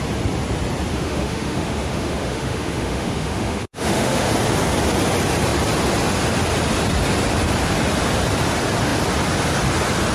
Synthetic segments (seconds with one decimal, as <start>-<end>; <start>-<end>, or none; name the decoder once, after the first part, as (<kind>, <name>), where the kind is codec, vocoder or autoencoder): 0.9-4.3 (autoencoder, DAC-VAE)

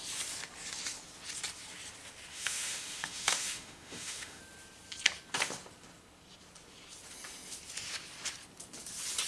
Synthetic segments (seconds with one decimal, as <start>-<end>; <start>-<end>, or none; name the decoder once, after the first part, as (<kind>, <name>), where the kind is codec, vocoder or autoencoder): 2.3-4.4 (autoencoder, DAC-VAE)

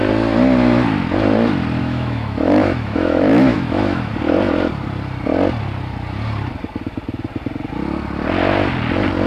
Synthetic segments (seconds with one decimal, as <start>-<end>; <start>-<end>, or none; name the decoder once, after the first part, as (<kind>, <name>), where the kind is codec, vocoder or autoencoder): 1.8-4.1 (autoencoder, DAC-VAE)

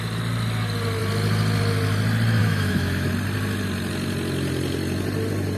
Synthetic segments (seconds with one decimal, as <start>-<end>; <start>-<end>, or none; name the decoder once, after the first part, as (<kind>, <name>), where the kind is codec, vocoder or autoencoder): 2.4-3.1 (autoencoder, DAC-VAE)

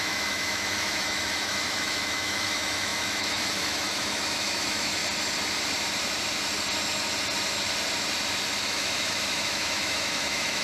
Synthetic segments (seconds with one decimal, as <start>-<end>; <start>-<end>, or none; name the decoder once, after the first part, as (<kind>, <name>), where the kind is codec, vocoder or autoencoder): 0.0-5.0 (autoencoder, DAC-VAE); 8.6-10.6

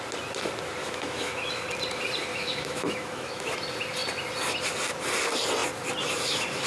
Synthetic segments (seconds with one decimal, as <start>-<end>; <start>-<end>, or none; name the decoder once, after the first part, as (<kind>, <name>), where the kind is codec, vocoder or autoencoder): 0.8-1.6 (autoencoder, DAC-VAE); 2.3-3.5

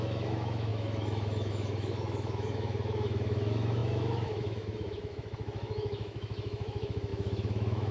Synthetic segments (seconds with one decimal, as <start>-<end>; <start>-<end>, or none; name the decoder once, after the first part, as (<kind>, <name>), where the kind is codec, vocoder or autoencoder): 0.0-7.9 (autoencoder, DAC-VAE)

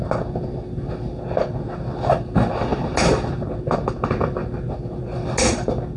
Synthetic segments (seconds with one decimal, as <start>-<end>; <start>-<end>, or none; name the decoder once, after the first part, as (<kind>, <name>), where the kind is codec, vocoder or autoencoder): none